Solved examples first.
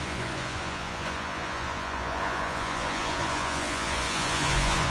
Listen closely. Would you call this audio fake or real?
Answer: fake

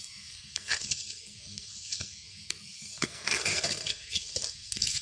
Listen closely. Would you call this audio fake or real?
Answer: fake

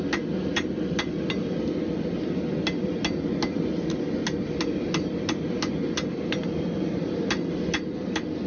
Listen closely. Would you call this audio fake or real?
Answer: real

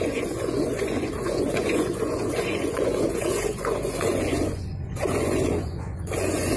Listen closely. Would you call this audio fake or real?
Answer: fake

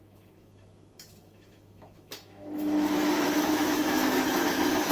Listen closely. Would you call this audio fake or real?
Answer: fake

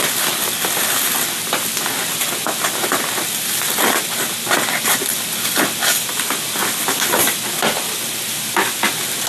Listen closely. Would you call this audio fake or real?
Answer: real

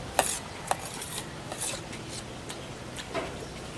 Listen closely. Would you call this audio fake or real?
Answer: real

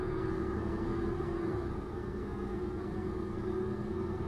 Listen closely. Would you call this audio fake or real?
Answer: fake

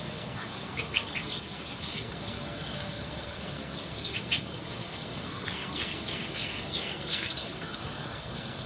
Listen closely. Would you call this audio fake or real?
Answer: fake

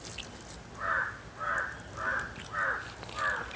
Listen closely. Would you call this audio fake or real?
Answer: real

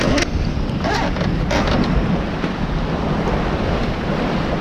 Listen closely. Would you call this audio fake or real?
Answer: real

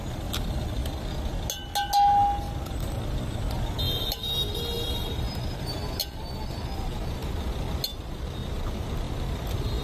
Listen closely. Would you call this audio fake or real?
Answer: real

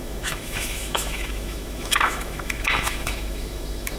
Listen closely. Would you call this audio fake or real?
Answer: fake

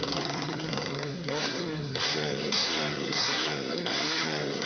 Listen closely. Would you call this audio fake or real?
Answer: fake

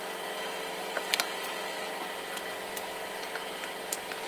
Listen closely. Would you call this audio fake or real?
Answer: real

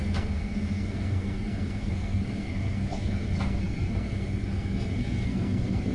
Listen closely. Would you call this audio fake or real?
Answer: fake